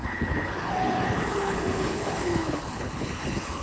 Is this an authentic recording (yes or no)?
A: no